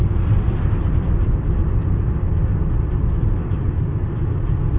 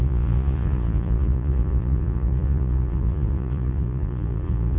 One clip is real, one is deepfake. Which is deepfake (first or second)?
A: second